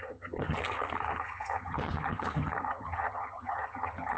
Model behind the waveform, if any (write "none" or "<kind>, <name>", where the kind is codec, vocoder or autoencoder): vocoder, HiFi-GAN